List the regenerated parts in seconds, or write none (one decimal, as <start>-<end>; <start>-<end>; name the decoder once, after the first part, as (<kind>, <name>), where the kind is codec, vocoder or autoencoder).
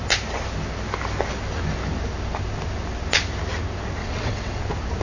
4.0-4.6 (vocoder, WaveNeXt)